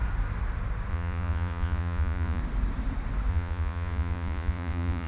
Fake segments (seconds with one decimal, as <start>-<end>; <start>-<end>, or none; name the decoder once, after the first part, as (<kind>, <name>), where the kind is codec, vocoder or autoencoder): 0.9-2.4 (vocoder, Vocos); 3.3-5.1